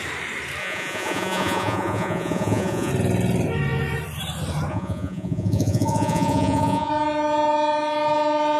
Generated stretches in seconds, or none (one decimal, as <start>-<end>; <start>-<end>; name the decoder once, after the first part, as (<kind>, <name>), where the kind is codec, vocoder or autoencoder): 0.6-2.9 (vocoder, Vocos); 4.7-6.9